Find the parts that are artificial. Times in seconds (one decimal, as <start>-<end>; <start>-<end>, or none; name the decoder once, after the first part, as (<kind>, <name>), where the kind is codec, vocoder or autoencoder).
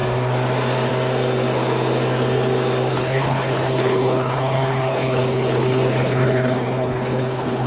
2.9-7.7 (codec, HILCodec)